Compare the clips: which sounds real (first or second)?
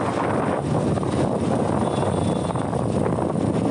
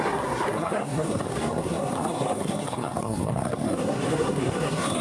first